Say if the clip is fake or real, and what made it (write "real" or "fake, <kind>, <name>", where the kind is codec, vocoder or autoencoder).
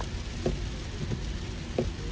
real